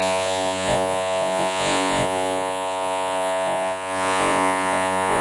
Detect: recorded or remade remade